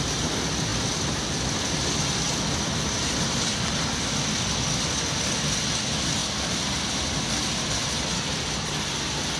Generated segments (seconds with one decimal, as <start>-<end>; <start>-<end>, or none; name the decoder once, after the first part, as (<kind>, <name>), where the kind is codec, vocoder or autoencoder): none